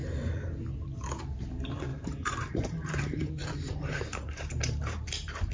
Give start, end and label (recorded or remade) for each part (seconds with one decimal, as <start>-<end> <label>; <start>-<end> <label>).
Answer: 0.0-1.9 recorded; 1.9-5.5 remade